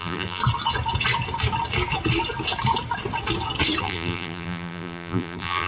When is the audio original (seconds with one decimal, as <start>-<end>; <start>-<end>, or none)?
0.4-3.8